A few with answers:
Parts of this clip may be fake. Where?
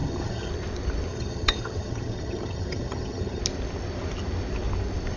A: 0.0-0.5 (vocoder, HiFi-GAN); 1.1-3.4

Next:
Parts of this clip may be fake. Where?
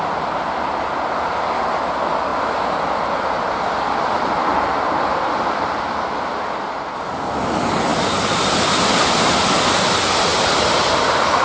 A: none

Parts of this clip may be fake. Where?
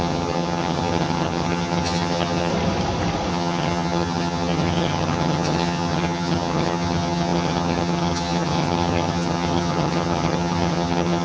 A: 0.0-2.5 (vocoder, HiFi-GAN); 3.3-11.2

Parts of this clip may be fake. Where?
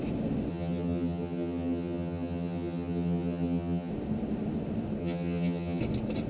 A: 0.5-3.9 (vocoder, HiFi-GAN); 5.0-5.8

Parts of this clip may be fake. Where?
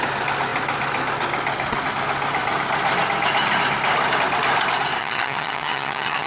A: 5.0-6.3 (vocoder, HiFi-GAN)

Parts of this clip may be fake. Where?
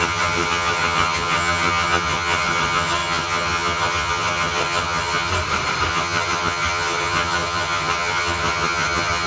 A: 0.0-5.3 (vocoder, HiFi-GAN); 5.9-9.3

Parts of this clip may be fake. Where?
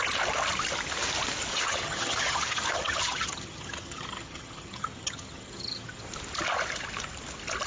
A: 1.5-6.0 (vocoder, HiFi-GAN)